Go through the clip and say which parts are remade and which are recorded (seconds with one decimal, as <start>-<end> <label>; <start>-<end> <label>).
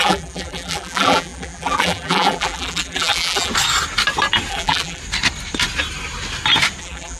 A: 0.0-3.5 remade; 3.5-4.5 recorded; 4.5-5.0 remade; 5.0-6.8 recorded; 6.8-7.2 remade